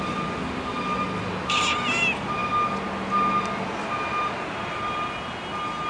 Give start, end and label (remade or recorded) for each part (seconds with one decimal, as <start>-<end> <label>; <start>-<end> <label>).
0.0-5.9 recorded